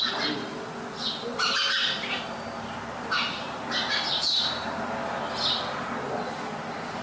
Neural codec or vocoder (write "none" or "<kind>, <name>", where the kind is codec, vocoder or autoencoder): none